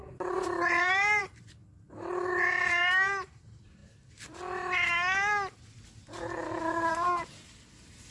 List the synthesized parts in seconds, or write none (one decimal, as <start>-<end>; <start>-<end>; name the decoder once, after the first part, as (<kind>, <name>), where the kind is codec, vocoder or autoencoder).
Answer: 0.0-3.8 (vocoder, BigVGAN v2); 6.9-8.1